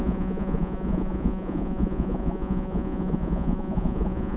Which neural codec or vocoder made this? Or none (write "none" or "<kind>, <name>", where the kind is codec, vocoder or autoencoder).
vocoder, Vocos